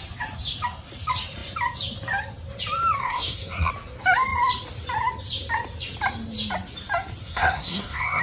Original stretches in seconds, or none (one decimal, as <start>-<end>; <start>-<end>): 0.0-3.0; 3.7-7.2